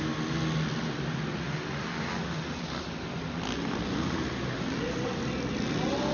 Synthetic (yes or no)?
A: no